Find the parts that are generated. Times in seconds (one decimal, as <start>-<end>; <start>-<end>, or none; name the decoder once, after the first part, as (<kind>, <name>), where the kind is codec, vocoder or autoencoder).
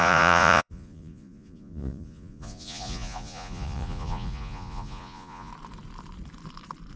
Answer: 0.0-5.5 (vocoder, Vocos)